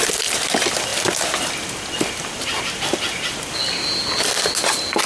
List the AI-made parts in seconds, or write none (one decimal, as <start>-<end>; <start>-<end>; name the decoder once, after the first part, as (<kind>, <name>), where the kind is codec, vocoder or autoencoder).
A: none